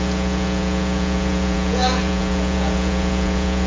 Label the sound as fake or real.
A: fake